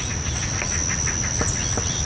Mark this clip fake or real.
real